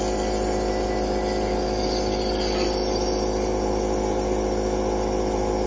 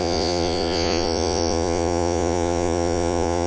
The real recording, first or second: first